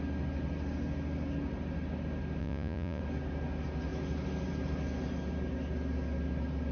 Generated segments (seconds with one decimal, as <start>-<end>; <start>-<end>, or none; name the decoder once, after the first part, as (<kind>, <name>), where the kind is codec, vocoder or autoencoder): 2.4-3.0 (vocoder, Vocos)